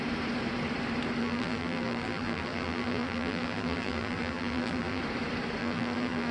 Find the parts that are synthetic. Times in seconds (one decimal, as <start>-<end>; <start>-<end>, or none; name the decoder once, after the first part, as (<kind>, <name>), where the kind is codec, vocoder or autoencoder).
1.2-5.0 (vocoder, BigVGAN v2); 5.6-6.3